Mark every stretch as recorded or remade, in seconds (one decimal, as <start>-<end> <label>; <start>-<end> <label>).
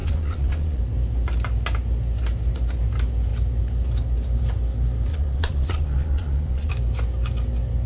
0.0-0.8 remade; 0.8-5.1 recorded; 5.1-6.7 remade; 6.7-7.9 recorded